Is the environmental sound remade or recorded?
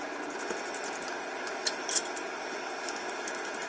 recorded